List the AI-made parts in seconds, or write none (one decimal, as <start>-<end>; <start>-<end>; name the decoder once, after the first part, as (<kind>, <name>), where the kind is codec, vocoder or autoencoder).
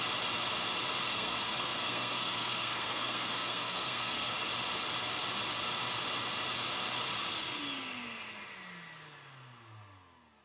1.1-4.3 (codec, SNAC)